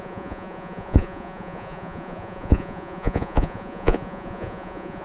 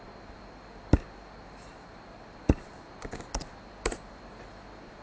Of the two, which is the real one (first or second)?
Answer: second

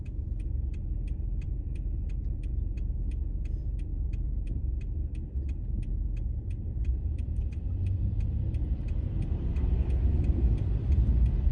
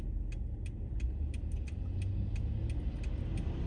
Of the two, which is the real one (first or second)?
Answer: second